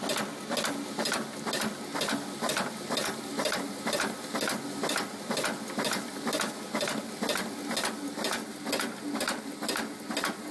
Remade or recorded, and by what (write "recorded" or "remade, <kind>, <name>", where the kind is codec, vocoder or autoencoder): recorded